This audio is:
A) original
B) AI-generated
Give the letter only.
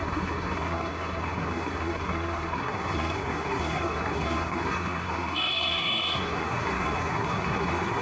B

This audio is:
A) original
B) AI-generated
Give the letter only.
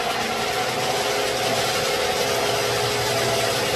A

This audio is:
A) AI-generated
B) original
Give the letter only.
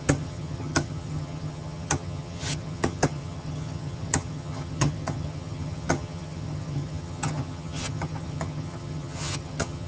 A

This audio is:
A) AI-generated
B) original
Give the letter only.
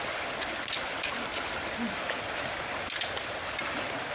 B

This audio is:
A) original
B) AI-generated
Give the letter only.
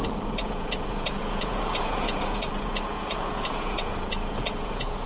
B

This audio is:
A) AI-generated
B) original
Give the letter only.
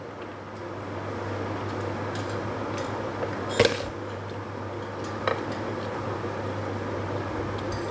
B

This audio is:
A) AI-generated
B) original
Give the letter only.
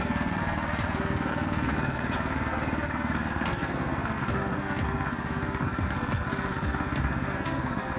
A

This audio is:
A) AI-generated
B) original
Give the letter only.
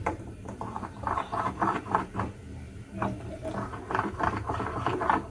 A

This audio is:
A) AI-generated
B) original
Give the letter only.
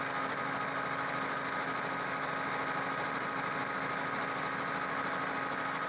B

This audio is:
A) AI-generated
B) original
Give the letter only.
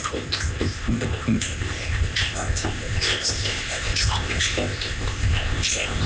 A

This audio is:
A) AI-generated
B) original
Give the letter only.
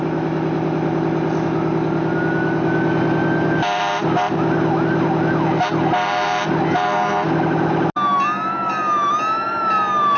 B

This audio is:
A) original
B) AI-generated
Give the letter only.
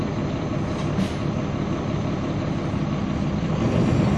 A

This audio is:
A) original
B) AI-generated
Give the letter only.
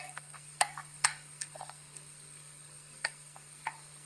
B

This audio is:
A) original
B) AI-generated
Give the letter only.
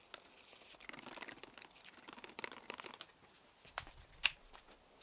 A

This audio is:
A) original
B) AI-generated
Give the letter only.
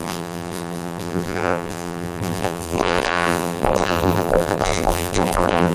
B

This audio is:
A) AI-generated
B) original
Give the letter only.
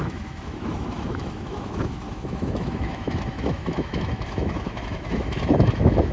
A